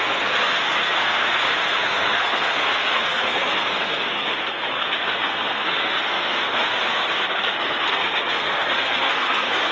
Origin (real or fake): fake